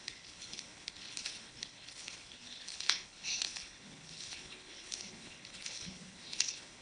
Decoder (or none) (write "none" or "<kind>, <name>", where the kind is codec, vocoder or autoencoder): codec, HILCodec